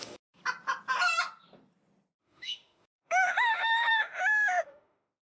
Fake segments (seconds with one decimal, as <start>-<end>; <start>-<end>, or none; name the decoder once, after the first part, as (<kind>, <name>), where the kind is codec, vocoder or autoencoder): 0.0-0.4 (autoencoder, DAC-VAE); 2.2-5.2